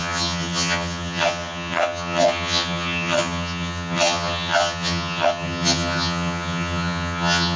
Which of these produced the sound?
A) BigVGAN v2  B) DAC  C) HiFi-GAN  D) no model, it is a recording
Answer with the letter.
C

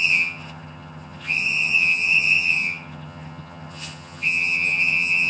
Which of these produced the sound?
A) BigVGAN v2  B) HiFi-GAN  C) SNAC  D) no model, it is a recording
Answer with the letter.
B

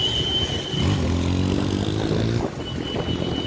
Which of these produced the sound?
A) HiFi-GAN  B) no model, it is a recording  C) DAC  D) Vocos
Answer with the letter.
B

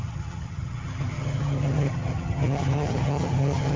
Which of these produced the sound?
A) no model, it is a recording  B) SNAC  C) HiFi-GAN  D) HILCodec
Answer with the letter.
C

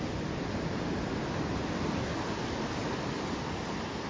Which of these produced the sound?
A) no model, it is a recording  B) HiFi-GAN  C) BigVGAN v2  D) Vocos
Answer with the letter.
A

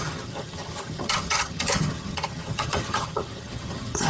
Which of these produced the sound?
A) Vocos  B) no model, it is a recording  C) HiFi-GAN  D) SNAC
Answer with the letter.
C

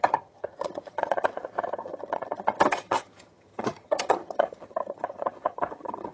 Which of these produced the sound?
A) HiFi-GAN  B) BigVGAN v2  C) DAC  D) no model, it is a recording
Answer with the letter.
A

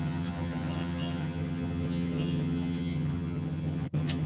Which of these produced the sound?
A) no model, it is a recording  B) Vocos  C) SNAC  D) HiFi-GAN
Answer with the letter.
D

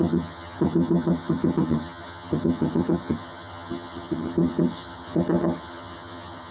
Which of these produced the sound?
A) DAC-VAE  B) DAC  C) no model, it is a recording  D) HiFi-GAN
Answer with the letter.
D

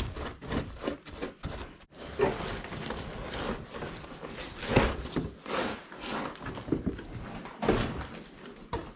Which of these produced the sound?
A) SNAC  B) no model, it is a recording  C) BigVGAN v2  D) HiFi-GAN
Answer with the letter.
B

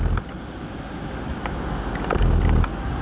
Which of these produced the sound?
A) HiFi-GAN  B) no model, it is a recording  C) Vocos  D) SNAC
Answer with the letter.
B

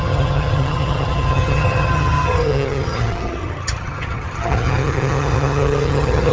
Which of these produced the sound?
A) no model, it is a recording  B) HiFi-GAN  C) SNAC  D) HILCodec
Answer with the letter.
B